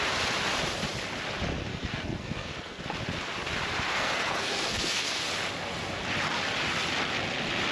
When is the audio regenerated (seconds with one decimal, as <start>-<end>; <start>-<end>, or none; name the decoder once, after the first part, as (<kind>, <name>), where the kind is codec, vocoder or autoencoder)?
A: 1.7-2.8 (codec, SNAC); 3.9-5.2